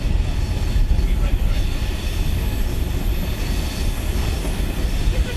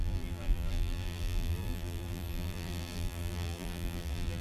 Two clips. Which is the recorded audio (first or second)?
first